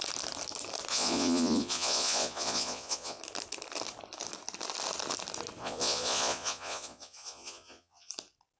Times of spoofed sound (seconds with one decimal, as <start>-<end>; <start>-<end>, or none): 0.9-3.2; 5.6-8.1